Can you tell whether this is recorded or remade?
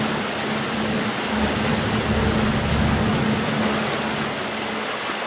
recorded